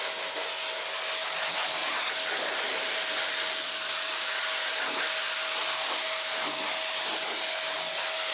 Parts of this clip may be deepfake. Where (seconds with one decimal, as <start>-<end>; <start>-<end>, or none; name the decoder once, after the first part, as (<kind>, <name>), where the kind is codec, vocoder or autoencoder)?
none

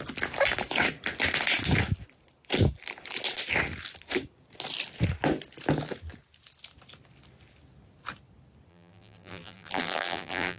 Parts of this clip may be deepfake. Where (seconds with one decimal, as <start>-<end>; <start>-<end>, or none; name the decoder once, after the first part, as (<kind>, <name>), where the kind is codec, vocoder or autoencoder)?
8.7-10.6 (vocoder, BigVGAN v2)

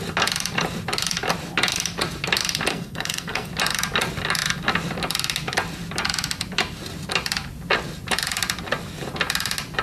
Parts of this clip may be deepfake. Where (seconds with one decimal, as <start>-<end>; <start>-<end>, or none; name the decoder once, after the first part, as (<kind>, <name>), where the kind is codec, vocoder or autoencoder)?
2.7-3.5 (codec, SNAC)

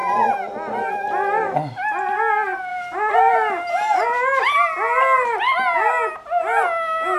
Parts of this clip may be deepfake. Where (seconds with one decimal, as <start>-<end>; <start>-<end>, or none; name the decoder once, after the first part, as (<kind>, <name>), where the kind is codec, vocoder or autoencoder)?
2.7-3.2 (vocoder, BigVGAN v2)

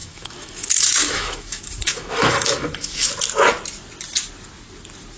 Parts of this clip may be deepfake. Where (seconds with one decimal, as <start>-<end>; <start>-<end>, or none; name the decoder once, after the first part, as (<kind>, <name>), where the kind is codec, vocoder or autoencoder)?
0.0-3.1 (autoencoder, DAC-VAE)